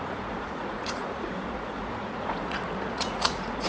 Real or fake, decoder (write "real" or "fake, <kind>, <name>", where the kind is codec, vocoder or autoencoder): fake, vocoder, Vocos